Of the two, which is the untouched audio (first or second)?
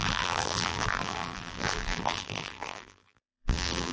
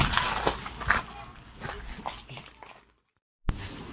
second